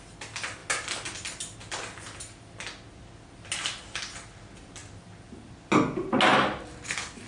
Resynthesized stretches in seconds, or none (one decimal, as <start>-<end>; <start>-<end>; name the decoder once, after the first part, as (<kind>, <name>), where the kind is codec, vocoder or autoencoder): none